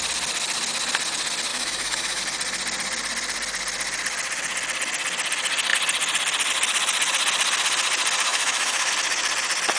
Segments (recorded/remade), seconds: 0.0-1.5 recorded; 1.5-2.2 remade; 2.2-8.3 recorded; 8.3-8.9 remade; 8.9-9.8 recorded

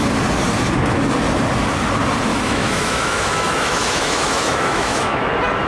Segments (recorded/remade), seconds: 0.0-2.3 recorded; 2.3-5.3 remade; 5.3-5.7 recorded